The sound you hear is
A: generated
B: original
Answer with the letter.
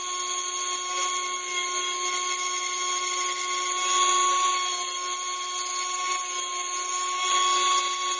B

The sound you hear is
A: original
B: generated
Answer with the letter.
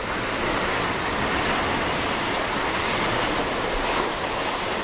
A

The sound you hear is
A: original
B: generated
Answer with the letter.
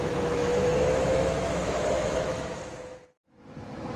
B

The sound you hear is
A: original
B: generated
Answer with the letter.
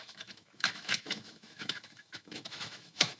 B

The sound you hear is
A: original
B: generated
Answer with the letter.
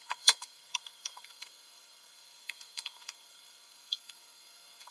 B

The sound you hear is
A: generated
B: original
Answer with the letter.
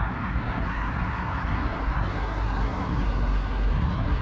A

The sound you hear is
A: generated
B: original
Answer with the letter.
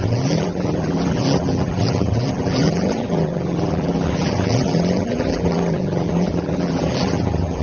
A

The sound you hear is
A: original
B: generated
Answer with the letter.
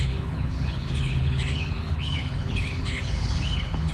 B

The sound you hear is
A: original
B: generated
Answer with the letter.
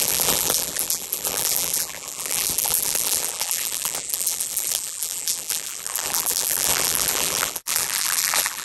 B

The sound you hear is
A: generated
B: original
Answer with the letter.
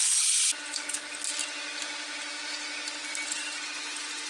B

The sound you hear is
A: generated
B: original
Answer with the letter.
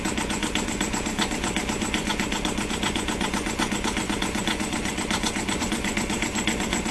A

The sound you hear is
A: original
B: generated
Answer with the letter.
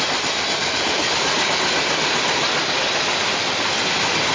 A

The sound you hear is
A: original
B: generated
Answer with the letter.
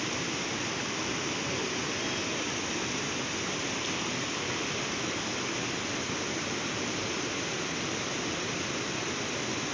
A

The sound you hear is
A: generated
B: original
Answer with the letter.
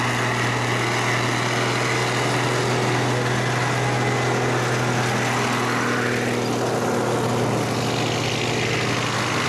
B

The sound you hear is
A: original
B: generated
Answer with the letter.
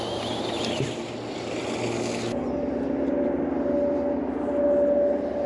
A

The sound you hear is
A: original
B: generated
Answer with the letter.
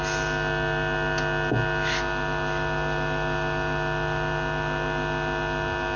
A